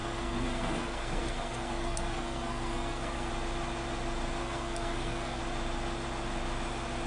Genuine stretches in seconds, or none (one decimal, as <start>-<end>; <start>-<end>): 3.3-4.4; 5.4-7.1